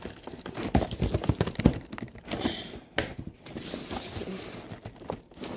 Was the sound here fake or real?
real